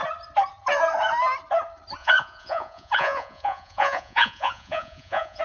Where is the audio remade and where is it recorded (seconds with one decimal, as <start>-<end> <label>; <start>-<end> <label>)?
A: 0.0-2.0 recorded; 2.0-5.4 remade